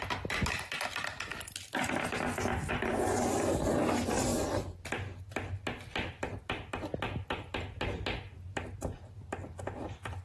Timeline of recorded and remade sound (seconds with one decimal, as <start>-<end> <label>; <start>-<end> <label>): 0.0-10.2 recorded